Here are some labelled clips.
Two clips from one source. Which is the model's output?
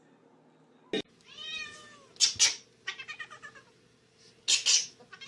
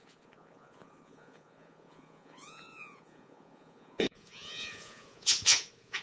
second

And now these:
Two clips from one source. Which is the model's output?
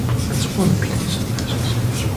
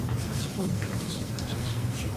second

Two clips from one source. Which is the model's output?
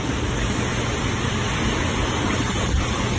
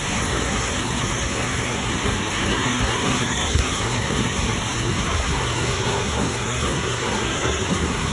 second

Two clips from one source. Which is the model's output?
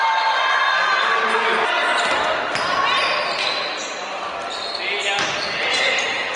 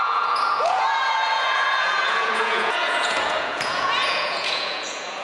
second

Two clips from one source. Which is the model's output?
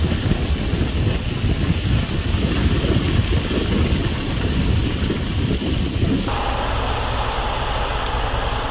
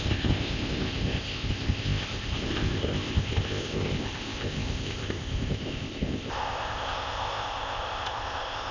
second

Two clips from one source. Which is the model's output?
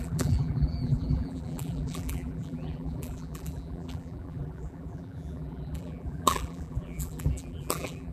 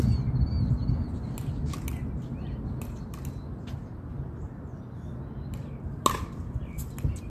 first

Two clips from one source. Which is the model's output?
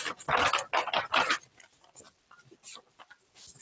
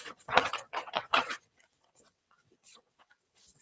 second